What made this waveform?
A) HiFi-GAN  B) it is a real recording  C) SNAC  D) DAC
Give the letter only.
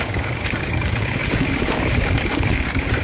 D